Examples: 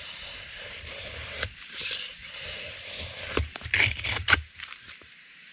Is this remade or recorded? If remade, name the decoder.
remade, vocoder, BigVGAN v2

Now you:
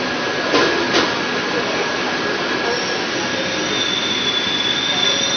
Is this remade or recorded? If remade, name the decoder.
recorded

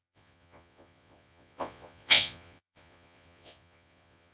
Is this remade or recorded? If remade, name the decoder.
remade, vocoder, Vocos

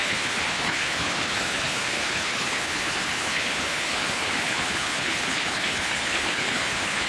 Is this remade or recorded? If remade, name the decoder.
remade, codec, HILCodec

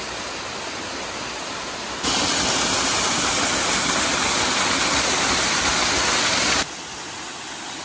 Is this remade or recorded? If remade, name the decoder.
recorded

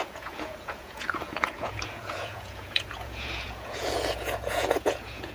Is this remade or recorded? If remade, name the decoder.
remade, vocoder, Vocos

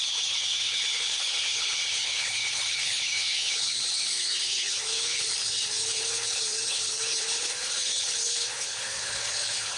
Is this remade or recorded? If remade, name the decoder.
remade, codec, HILCodec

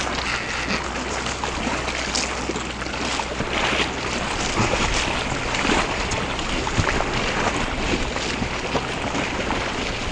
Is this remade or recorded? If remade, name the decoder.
recorded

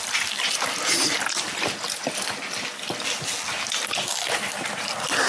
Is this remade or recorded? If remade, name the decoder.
recorded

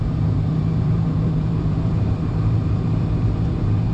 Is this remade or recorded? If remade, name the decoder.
remade, vocoder, BigVGAN v2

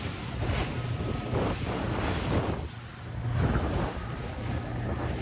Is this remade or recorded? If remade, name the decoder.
recorded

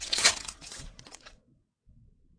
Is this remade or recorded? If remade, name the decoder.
remade, vocoder, WaveNeXt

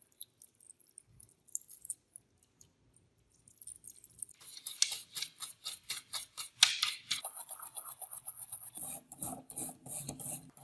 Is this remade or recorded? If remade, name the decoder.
recorded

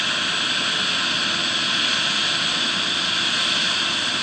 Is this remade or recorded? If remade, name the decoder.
recorded